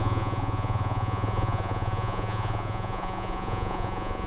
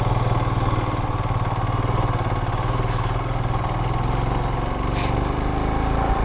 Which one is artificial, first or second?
first